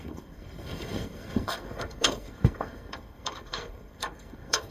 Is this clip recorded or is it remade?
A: remade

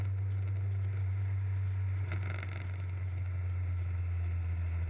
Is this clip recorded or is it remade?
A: recorded